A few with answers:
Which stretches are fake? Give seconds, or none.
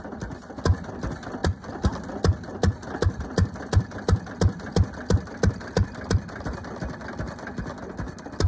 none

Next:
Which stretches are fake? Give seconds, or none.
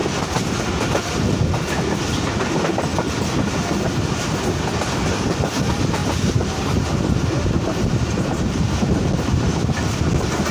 6.0-9.1 (vocoder, BigVGAN v2)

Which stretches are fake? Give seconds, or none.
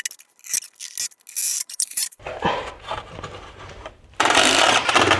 1.5-4.6 (vocoder, BigVGAN v2)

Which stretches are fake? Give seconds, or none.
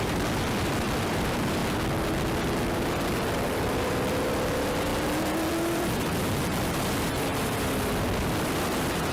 0.0-1.6 (vocoder, BigVGAN v2); 2.7-4.9; 5.5-9.1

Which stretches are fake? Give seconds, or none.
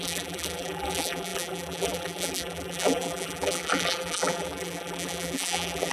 0.0-5.9 (vocoder, BigVGAN v2)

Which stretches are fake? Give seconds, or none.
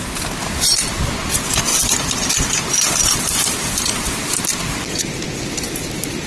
1.7-4.2 (vocoder, BigVGAN v2)